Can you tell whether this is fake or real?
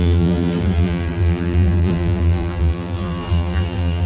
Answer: fake